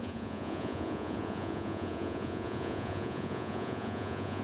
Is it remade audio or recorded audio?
remade